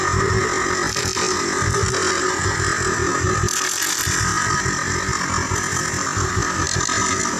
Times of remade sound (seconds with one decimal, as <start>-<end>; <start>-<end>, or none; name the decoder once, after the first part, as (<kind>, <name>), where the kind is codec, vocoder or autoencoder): 4.3-6.6 (vocoder, BigVGAN v2)